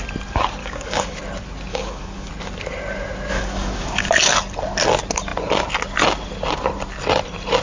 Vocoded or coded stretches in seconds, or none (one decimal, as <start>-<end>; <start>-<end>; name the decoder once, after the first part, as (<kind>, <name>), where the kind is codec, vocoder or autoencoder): 0.6-1.2 (codec, DAC); 1.7-2.3; 3.3-4.1